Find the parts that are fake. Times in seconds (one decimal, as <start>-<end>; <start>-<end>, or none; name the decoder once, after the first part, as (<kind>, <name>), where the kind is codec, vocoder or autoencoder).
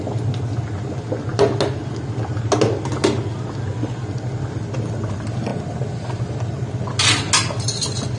none